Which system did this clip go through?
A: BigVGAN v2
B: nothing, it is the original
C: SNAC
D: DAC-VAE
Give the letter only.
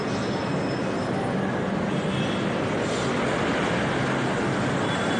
B